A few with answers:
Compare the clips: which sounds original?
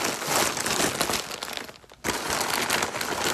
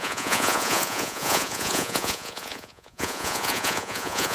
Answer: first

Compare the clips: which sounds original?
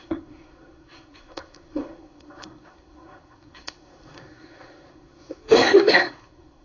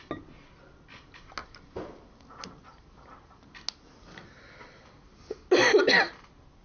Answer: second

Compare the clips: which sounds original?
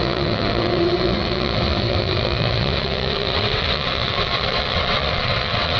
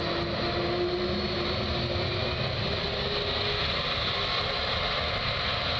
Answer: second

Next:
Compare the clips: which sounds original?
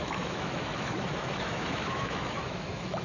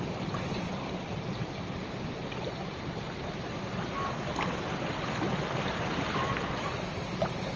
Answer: second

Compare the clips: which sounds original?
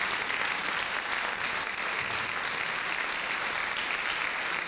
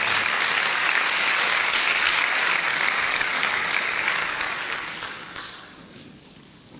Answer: first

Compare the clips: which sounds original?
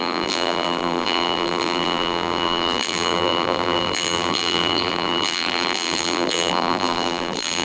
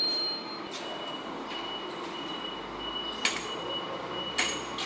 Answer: second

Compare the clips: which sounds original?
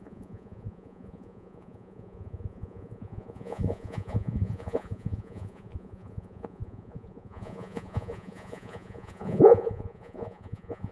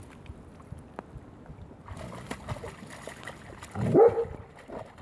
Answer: second